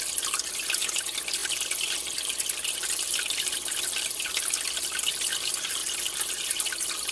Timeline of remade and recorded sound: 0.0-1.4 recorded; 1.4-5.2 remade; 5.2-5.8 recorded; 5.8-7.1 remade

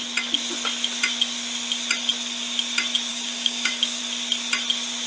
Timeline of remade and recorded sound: 0.0-3.1 recorded; 3.1-4.0 remade; 4.0-5.1 recorded

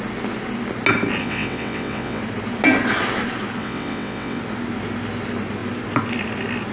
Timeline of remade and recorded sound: 0.0-1.2 recorded; 1.2-2.2 remade; 2.2-3.6 recorded; 3.6-4.4 remade; 4.4-6.7 recorded

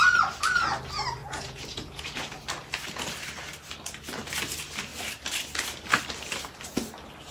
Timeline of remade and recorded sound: 0.0-1.2 recorded; 1.2-2.4 remade; 2.4-7.3 recorded

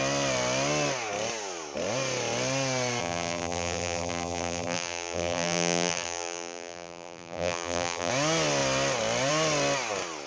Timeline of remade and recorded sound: 0.0-3.0 recorded; 3.0-8.1 remade; 8.1-10.3 recorded

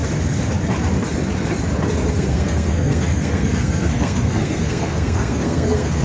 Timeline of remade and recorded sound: 0.0-2.1 recorded; 2.1-6.0 remade

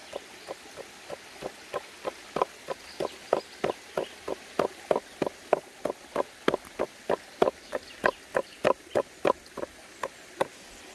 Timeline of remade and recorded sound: 0.0-10.9 recorded